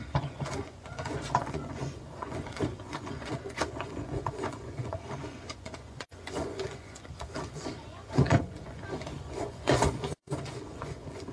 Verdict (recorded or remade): remade